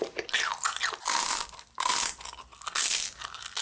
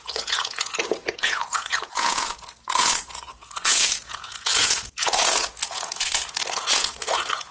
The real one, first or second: first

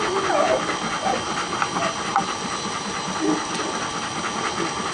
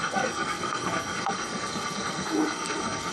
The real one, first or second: first